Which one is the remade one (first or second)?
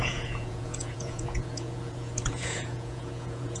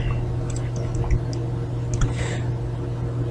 first